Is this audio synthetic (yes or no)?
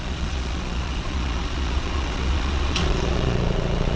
yes